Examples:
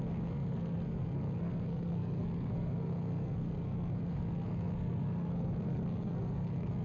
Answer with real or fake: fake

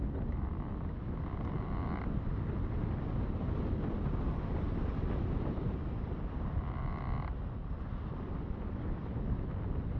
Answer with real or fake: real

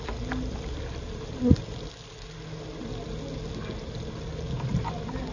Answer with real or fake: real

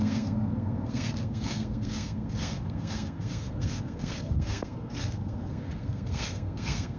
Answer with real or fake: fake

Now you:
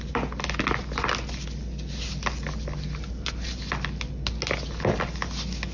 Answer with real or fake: real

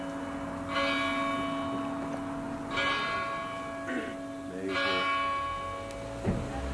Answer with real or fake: real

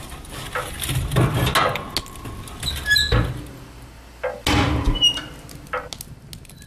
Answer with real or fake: real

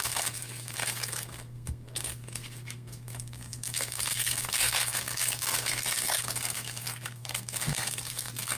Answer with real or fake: fake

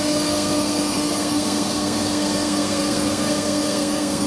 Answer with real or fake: fake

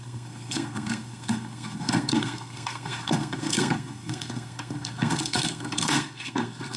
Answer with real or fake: fake